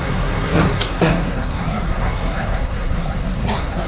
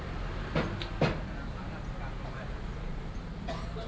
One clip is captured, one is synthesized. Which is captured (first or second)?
second